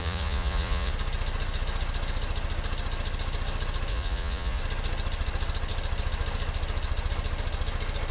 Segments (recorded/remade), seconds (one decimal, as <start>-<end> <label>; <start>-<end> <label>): 0.0-0.9 remade; 0.9-3.9 recorded; 3.9-4.6 remade; 4.6-8.1 recorded